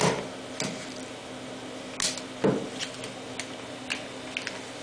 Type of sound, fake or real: real